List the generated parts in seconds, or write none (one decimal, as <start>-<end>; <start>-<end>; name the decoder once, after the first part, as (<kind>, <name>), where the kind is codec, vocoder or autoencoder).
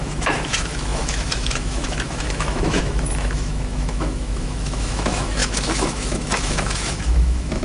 0.0-7.6 (autoencoder, DAC-VAE)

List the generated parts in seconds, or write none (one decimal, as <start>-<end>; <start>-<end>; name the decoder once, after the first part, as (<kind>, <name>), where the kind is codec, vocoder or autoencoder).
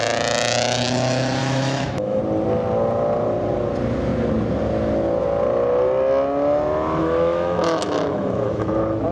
1.4-2.2 (autoencoder, DAC-VAE); 7.0-8.7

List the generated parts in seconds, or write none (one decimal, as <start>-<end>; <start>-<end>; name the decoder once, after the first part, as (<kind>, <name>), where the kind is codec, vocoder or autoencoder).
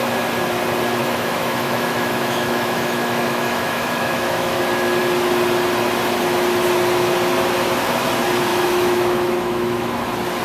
1.0-4.6 (autoencoder, DAC-VAE); 8.5-9.9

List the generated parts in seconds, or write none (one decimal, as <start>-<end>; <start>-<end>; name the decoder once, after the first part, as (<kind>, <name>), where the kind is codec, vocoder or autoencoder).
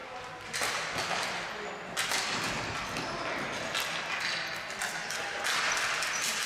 none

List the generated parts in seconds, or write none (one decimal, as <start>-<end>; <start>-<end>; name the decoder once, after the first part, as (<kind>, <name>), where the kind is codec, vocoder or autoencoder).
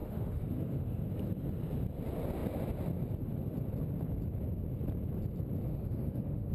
0.0-1.0 (autoencoder, DAC-VAE); 5.7-6.5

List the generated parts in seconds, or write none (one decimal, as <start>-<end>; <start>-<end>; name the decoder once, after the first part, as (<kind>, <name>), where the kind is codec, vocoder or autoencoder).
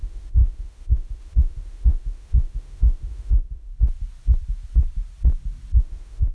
0.0-3.7 (autoencoder, DAC-VAE); 5.8-6.3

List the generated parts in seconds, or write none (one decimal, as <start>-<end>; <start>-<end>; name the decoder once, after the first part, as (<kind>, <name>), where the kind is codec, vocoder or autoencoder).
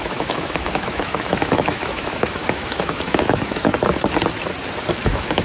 0.0-3.7 (autoencoder, DAC-VAE); 4.9-5.4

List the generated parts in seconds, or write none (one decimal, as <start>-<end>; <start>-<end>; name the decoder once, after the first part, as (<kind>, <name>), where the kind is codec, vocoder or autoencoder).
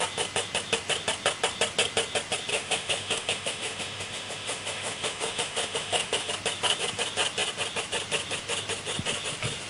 2.5-6.3 (autoencoder, DAC-VAE)